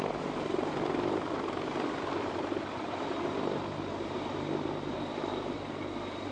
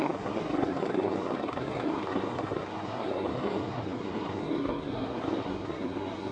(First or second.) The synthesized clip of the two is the second